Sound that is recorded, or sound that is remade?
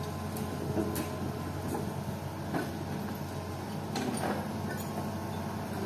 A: recorded